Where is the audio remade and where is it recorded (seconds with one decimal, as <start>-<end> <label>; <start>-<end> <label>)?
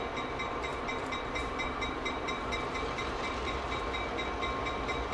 0.0-0.7 recorded; 0.7-3.8 remade; 3.8-5.1 recorded